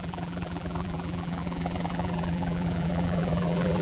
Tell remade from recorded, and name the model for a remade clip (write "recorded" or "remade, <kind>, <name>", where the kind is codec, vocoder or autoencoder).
remade, vocoder, BigVGAN v2